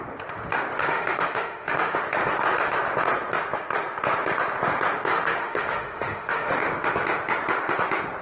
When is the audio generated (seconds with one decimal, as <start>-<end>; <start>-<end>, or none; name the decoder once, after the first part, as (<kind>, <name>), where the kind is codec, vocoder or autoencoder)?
0.8-2.0 (autoencoder, DAC-VAE); 5.1-6.5

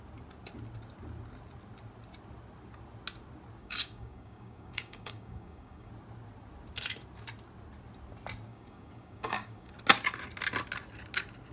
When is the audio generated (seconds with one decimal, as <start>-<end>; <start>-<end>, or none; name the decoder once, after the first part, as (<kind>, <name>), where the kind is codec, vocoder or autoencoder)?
3.6-5.9 (codec, DAC); 8.5-9.7

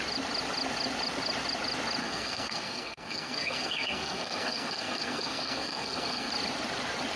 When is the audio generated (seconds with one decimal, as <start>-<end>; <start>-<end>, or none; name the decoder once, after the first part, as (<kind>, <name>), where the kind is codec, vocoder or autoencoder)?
2.0-6.3 (codec, SNAC)

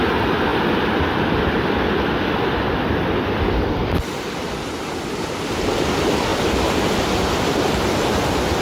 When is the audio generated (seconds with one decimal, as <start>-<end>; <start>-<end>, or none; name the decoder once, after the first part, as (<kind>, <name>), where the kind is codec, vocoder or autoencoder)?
3.8-5.5 (vocoder, BigVGAN v2); 6.3-8.0